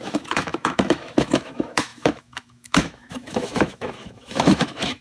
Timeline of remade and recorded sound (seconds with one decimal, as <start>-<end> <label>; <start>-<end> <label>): 0.0-5.0 remade